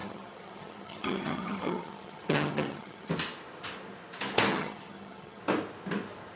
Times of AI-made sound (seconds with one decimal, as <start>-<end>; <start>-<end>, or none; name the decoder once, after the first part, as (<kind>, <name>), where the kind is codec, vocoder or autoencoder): 0.0-3.1 (vocoder, HiFi-GAN); 4.5-5.4